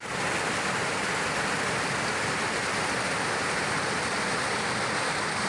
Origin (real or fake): fake